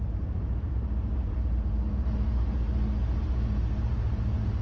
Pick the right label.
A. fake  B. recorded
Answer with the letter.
A